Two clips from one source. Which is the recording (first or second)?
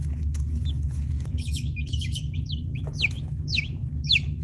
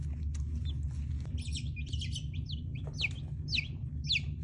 second